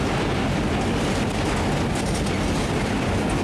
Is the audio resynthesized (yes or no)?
no